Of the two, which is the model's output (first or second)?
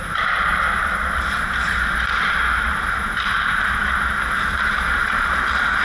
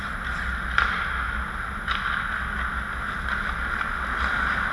first